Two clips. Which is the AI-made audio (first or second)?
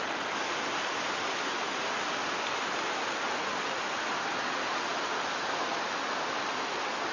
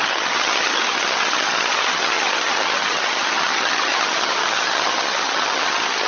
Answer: second